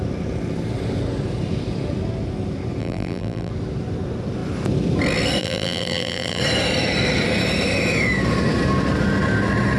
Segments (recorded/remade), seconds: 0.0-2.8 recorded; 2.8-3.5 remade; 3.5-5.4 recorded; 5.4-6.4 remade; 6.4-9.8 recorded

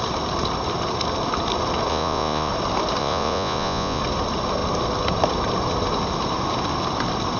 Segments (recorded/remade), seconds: 0.0-1.9 recorded; 1.9-2.5 remade; 2.5-3.0 recorded; 3.0-4.0 remade; 4.0-7.4 recorded

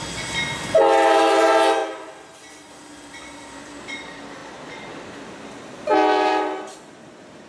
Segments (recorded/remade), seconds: 0.0-6.3 recorded; 6.3-7.5 remade

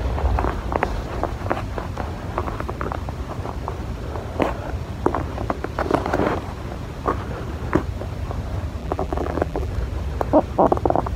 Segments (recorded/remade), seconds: 0.0-8.8 recorded; 8.8-9.7 remade; 9.7-11.2 recorded

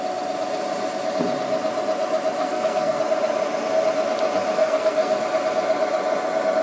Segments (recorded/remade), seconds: 0.0-2.4 recorded; 2.4-3.0 remade; 3.0-4.6 recorded; 4.6-5.2 remade; 5.2-6.6 recorded